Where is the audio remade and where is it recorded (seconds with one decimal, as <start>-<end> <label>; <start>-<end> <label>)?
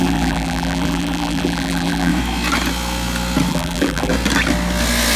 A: 0.0-2.1 remade; 2.1-3.5 recorded; 3.5-4.1 remade; 4.1-5.2 recorded